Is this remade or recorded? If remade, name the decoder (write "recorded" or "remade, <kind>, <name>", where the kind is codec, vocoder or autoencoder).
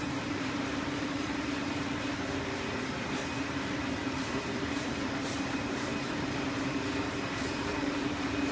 remade, vocoder, BigVGAN v2